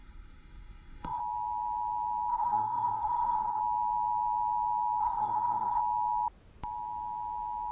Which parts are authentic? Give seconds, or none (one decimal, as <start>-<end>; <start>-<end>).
1.2-2.3; 3.6-5.0; 5.8-7.7